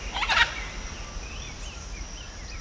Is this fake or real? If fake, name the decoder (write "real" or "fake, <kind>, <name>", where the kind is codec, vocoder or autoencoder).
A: real